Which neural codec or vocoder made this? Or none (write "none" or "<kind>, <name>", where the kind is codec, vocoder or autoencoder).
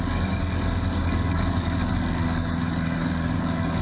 codec, DAC